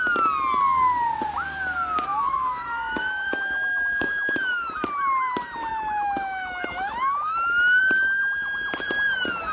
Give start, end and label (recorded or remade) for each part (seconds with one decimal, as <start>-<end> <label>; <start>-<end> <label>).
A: 0.0-2.1 recorded; 2.1-4.7 remade; 4.7-5.7 recorded; 5.7-7.8 remade; 7.8-9.5 recorded